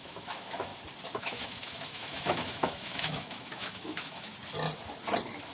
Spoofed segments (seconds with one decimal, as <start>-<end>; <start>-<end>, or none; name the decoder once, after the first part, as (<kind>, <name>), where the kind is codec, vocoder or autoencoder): 0.0-0.7 (autoencoder, DAC-VAE); 1.2-4.3

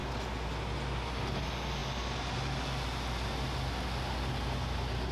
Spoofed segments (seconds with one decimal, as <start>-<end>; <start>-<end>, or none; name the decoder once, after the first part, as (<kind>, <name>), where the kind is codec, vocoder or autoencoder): none

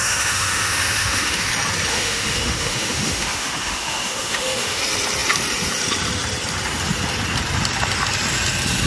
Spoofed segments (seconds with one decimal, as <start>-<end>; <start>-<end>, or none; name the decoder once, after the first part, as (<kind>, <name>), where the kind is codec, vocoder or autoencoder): 0.0-1.5 (autoencoder, DAC-VAE); 1.9-4.8

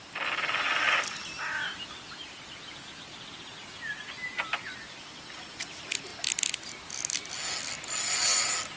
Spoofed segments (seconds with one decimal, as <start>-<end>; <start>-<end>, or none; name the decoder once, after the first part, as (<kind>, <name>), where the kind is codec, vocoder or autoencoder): none

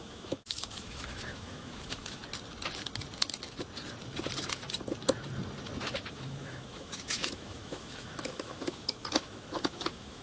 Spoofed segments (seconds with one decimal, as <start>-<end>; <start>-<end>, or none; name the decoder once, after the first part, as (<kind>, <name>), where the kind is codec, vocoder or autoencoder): 0.0-2.2 (autoencoder, DAC-VAE); 6.1-10.2